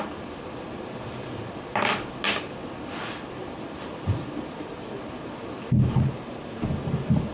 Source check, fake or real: real